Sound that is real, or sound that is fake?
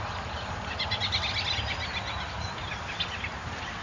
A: real